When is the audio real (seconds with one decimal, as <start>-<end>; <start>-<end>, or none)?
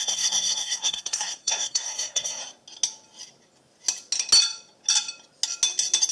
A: 2.4-6.1